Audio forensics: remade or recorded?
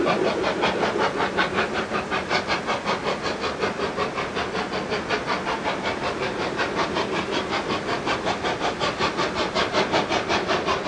recorded